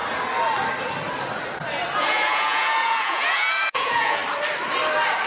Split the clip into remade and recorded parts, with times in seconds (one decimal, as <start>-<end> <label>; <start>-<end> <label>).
0.0-2.0 recorded; 2.0-4.2 remade; 4.2-5.3 recorded